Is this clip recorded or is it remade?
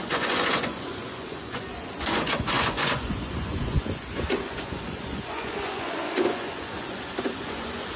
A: remade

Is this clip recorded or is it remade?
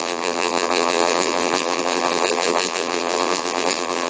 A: remade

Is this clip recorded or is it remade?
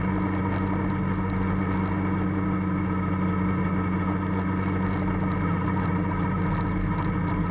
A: recorded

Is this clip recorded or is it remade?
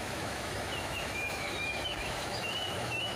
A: remade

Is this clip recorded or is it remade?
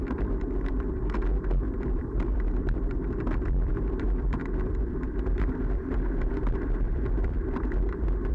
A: remade